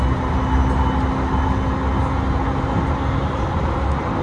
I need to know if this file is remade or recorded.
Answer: recorded